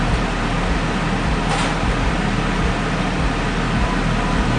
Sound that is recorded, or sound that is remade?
recorded